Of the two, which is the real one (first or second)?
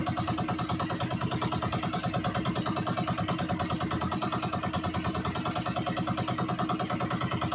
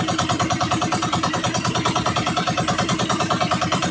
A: first